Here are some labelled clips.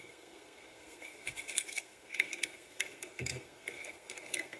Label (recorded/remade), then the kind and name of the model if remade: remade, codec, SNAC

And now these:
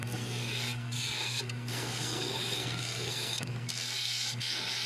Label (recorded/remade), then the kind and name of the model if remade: remade, codec, SNAC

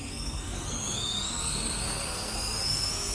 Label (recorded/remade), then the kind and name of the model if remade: remade, codec, SNAC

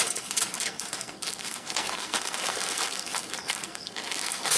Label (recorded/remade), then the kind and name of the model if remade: remade, codec, SNAC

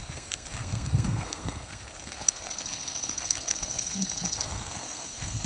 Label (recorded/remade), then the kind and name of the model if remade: remade, codec, SNAC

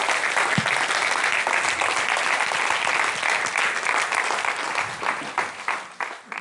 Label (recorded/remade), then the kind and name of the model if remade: recorded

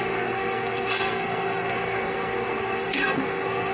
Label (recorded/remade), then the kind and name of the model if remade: remade, codec, SNAC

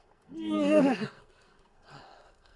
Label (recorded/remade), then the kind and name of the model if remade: remade, codec, SNAC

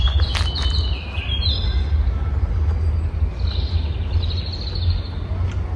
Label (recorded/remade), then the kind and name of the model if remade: recorded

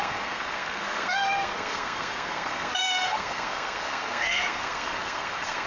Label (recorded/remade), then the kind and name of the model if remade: remade, codec, SNAC